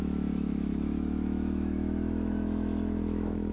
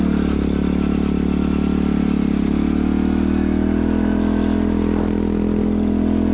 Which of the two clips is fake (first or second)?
first